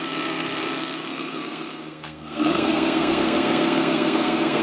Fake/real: fake